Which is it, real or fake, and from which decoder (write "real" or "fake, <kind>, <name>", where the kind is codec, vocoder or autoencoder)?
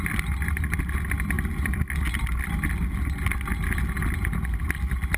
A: real